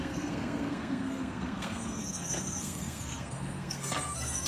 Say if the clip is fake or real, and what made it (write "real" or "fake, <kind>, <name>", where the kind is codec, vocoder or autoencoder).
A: fake, codec, SNAC